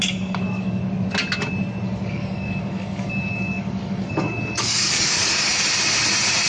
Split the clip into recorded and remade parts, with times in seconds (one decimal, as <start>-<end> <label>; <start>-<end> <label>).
0.0-0.8 remade; 0.8-2.1 recorded; 2.1-5.5 remade; 5.5-6.5 recorded